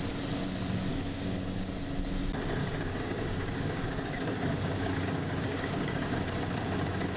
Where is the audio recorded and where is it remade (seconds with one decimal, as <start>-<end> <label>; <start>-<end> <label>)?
0.0-0.9 recorded; 0.9-1.7 remade; 1.7-2.6 recorded; 2.6-6.1 remade; 6.1-7.2 recorded